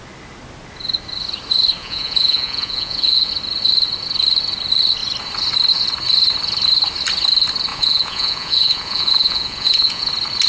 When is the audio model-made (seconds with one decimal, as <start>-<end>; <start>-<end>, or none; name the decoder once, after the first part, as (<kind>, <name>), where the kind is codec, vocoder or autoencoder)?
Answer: 1.8-3.3 (vocoder, Vocos); 7.7-10.1